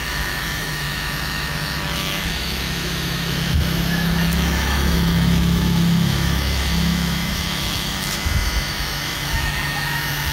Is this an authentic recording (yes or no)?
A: no